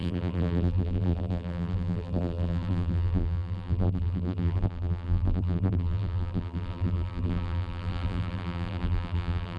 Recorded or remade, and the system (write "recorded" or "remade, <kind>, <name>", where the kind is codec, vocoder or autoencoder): remade, vocoder, BigVGAN v2